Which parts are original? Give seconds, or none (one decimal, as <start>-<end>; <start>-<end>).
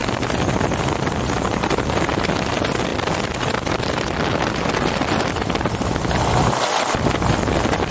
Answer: 0.9-2.9; 6.7-7.9